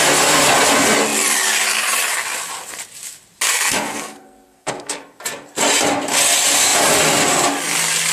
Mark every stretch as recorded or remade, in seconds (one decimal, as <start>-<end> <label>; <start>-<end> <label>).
0.0-3.5 recorded; 3.5-5.0 remade; 5.0-8.1 recorded